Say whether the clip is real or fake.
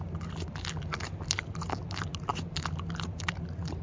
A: real